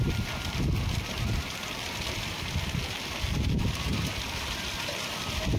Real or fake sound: fake